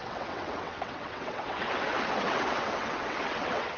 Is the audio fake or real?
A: fake